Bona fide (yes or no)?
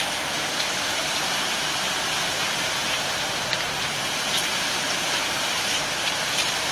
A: no